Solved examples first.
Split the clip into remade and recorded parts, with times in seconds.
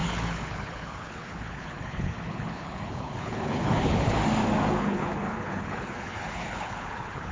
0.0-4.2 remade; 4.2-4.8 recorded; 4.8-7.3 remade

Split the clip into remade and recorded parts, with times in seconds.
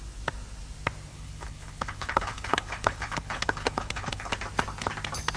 0.0-1.1 recorded; 1.1-4.3 remade; 4.3-5.4 recorded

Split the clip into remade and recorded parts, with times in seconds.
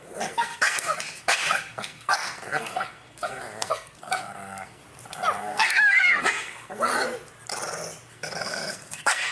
0.0-4.8 remade; 4.8-5.4 recorded; 5.4-6.9 remade; 6.9-8.1 recorded; 8.1-9.3 remade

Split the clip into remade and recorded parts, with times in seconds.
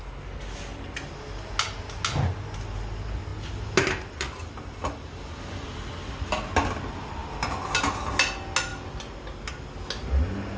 0.0-10.6 recorded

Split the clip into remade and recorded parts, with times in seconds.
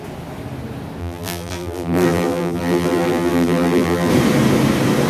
0.0-1.0 recorded; 1.0-4.1 remade; 4.1-5.1 recorded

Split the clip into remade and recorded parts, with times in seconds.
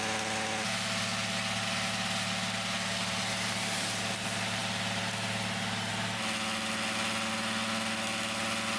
0.0-8.8 recorded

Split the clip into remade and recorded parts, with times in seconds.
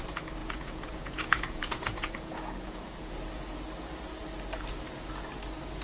0.0-0.4 recorded; 0.4-3.6 remade; 3.6-5.8 recorded